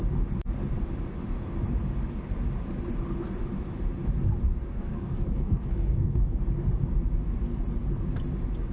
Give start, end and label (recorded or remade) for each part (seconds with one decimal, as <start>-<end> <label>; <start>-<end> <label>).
0.0-4.7 recorded; 4.7-6.4 remade; 6.4-8.7 recorded